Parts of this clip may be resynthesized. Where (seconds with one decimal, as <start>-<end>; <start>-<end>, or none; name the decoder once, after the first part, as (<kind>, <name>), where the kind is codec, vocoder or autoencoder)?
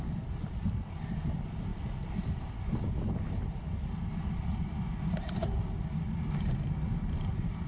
none